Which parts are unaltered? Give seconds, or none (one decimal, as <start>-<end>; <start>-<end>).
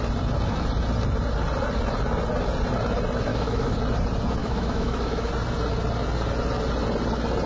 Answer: 0.0-3.3; 3.8-4.4; 5.3-7.5